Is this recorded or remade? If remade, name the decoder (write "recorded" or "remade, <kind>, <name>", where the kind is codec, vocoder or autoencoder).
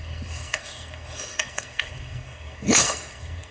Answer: remade, codec, SNAC